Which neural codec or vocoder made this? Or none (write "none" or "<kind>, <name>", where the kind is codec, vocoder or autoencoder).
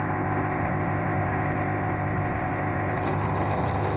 codec, ZipCodec